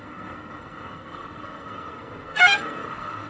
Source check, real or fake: fake